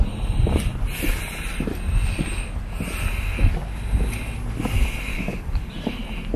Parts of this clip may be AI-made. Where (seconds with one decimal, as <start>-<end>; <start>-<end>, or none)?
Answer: 5.1-5.7